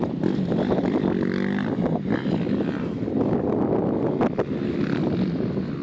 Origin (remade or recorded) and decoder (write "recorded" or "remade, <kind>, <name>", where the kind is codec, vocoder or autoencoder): recorded